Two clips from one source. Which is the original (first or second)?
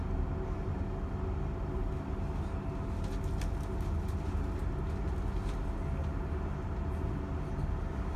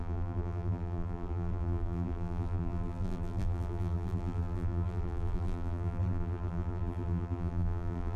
first